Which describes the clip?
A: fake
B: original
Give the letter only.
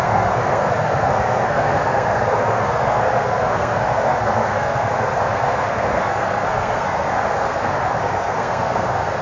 A